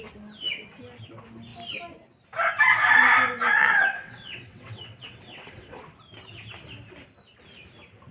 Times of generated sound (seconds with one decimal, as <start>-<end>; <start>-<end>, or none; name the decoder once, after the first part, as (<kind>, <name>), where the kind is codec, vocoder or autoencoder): 3.6-5.8 (vocoder, WaveNeXt)